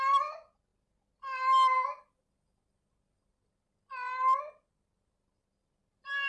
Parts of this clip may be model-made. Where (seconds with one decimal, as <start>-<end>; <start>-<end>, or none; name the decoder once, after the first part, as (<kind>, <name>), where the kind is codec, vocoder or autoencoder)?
none